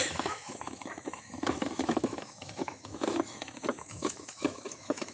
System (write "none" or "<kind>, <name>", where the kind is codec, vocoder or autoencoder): autoencoder, DAC-VAE